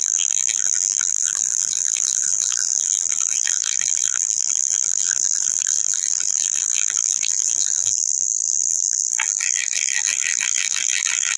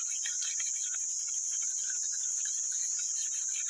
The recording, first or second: second